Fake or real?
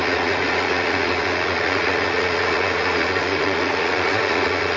fake